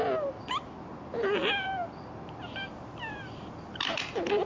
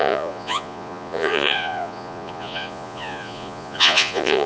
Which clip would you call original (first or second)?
first